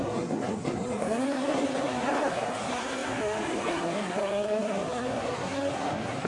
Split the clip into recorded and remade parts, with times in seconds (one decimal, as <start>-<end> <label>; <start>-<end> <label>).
0.0-6.3 remade